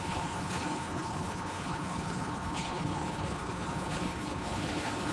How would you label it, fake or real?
fake